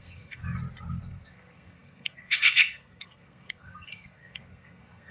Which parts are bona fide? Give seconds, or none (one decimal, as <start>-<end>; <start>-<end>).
0.4-1.0